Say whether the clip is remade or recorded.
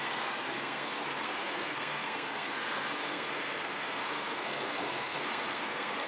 remade